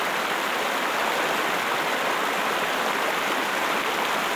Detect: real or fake real